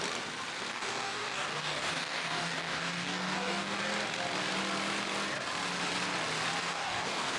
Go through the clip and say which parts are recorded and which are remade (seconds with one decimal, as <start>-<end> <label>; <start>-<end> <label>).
0.0-0.7 recorded; 0.7-3.8 remade; 3.8-6.6 recorded; 6.6-7.4 remade